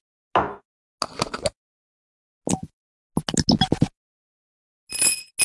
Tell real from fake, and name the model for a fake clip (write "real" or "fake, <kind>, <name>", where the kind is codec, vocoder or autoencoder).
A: real